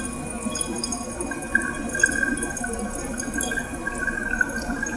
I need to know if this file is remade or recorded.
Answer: recorded